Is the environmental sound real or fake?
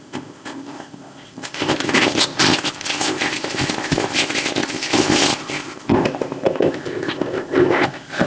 fake